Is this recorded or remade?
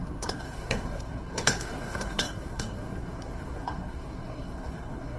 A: remade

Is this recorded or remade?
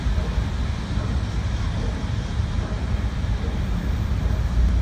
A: recorded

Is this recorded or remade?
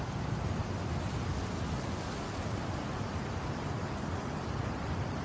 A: recorded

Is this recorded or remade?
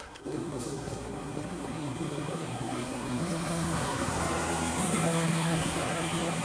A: remade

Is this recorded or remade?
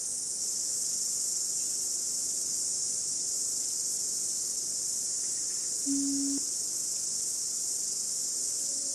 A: recorded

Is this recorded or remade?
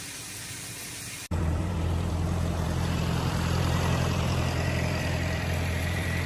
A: remade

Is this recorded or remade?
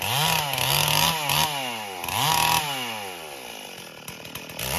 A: recorded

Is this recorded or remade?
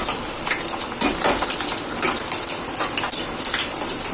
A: remade